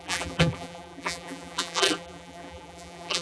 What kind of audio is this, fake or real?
fake